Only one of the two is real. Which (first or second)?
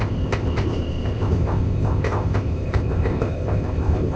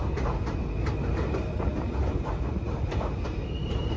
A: second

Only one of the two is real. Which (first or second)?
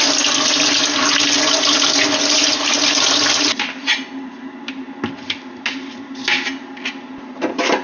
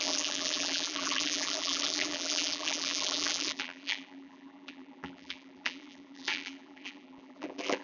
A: first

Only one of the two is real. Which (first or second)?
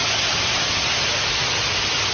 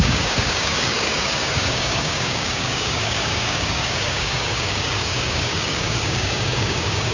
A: first